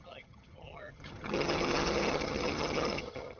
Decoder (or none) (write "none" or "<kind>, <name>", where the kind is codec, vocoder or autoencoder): vocoder, HiFi-GAN